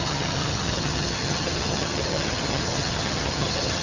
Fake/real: fake